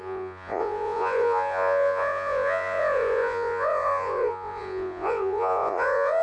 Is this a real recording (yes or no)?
no